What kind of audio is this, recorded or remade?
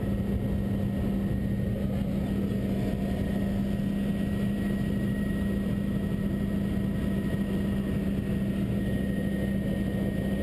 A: recorded